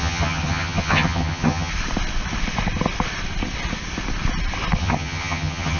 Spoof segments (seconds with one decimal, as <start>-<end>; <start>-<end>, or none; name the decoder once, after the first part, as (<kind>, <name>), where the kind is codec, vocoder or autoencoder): 0.0-1.7 (vocoder, HiFi-GAN); 4.8-5.8